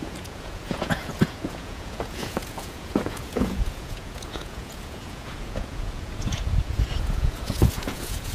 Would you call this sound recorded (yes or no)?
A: no